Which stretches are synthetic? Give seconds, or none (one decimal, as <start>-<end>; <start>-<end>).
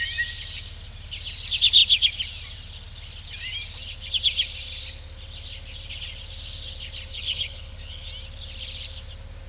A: 7.1-8.1